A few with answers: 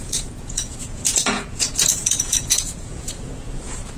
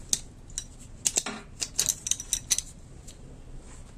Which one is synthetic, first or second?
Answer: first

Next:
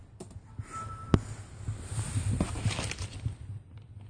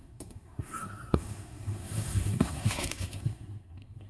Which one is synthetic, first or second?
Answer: second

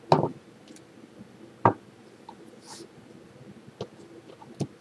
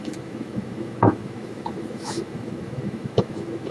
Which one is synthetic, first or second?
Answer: second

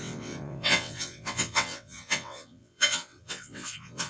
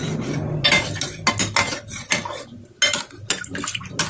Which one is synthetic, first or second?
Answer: first